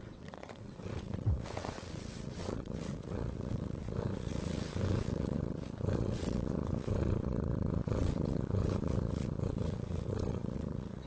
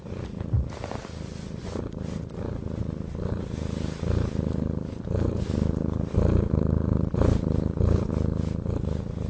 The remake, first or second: first